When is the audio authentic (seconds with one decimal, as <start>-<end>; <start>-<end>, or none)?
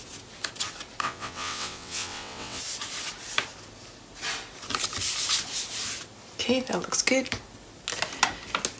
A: 0.0-1.0; 2.6-8.8